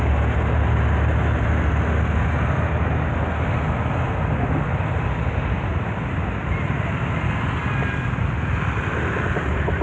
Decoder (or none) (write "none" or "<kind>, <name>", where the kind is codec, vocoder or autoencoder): none